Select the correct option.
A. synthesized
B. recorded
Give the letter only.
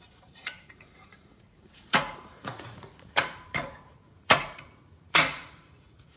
A